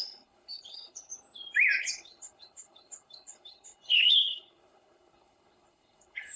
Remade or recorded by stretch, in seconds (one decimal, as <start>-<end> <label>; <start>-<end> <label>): 0.0-1.1 remade; 1.1-1.8 recorded; 1.8-6.4 remade